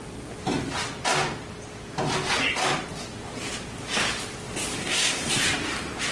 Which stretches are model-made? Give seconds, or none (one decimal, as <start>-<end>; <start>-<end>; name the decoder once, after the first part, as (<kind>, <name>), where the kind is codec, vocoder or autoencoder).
4.8-5.3 (codec, SNAC)